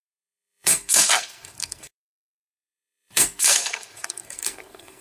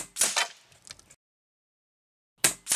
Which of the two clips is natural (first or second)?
second